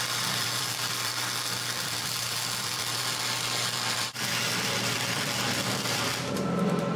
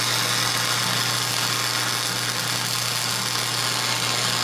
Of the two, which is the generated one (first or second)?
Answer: first